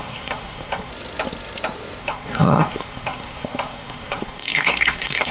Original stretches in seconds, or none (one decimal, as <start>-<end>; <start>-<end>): 0.9-2.0

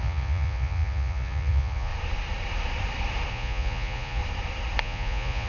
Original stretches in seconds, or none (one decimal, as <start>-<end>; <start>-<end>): 1.9-3.3; 4.2-4.8

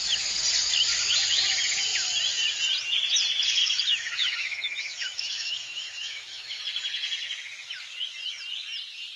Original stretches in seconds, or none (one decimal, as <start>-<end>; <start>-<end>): 0.0-3.6; 6.6-9.2

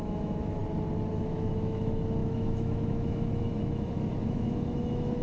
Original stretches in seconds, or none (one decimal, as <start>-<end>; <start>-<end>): 0.6-1.1